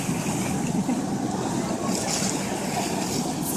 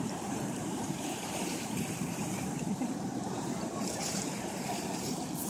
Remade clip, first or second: second